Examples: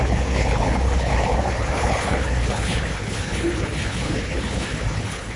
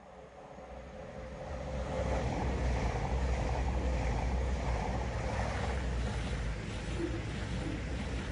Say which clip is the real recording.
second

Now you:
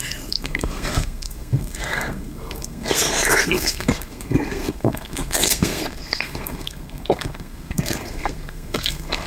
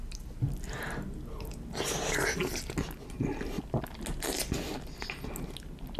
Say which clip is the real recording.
second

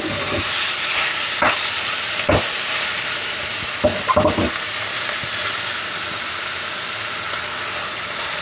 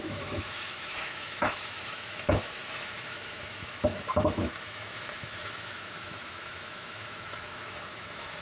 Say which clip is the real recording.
first